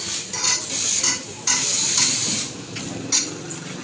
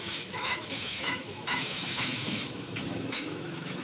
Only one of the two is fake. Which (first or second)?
second